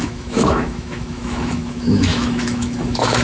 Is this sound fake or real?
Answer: fake